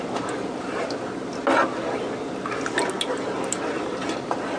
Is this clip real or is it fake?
real